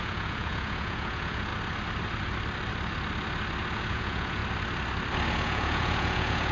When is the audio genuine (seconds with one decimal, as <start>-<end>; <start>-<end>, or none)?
1.5-3.8; 4.4-5.3